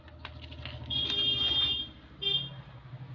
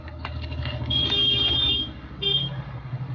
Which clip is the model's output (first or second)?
second